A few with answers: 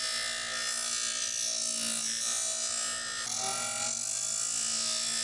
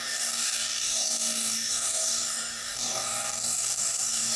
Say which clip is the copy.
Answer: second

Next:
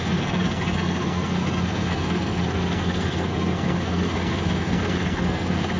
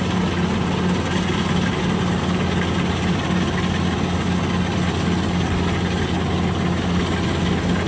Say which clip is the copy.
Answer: first